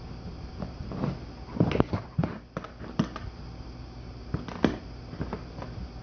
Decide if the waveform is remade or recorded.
recorded